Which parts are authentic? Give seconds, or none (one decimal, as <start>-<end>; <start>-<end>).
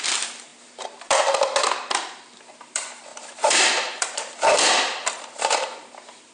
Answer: none